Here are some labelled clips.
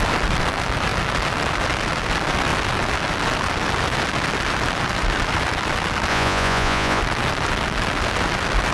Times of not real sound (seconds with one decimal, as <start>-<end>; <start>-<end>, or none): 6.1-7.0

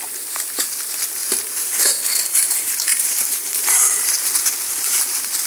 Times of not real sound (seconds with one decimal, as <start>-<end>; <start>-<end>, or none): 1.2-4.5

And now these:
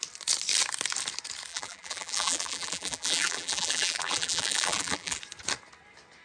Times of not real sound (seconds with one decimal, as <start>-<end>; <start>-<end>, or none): 1.5-5.2